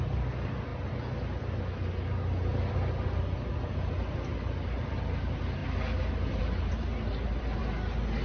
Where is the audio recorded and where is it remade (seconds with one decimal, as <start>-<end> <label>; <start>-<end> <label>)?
0.0-2.5 recorded; 2.5-3.2 remade; 3.2-5.6 recorded; 5.6-6.4 remade; 6.4-6.9 recorded; 6.9-7.6 remade; 7.6-8.2 recorded